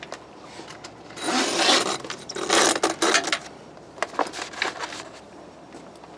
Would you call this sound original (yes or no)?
yes